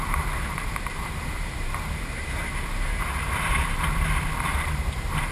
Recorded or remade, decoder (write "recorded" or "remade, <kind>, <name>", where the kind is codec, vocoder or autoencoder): remade, vocoder, BigVGAN v2